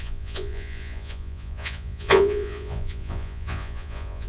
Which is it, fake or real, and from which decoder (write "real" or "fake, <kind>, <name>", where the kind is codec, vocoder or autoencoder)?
fake, vocoder, Vocos